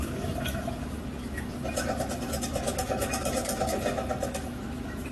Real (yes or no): no